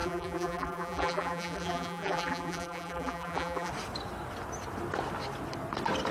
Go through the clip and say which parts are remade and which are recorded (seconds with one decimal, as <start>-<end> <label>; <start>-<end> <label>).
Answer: 0.0-3.7 remade; 3.7-6.1 recorded